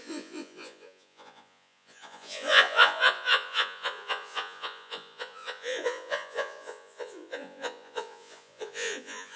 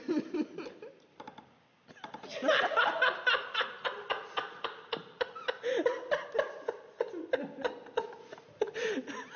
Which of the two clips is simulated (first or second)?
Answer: first